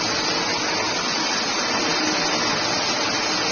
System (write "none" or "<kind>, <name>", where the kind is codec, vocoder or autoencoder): none